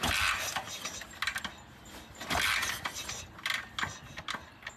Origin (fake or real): real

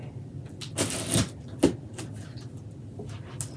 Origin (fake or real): real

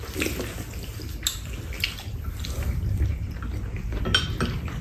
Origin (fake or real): real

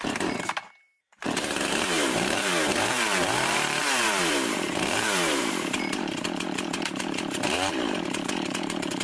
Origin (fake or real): fake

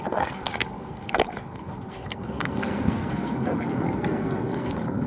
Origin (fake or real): fake